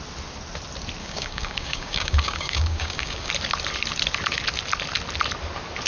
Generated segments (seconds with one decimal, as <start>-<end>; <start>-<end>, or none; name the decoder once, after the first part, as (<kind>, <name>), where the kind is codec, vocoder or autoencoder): 1.0-3.3 (codec, DAC)